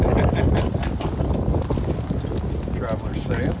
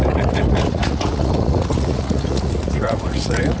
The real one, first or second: first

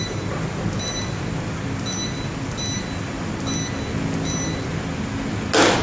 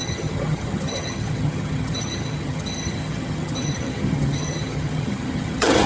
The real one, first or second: first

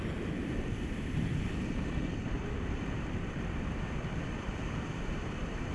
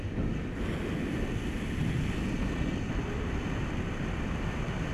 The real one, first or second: second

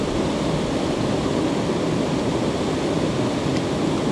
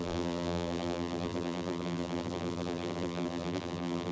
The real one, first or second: first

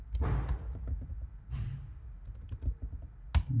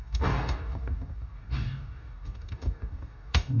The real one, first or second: first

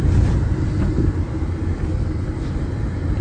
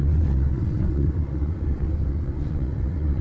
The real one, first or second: first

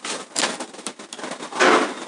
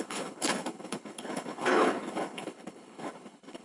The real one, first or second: first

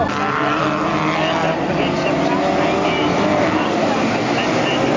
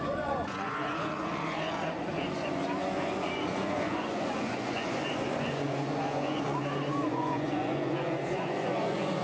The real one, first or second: first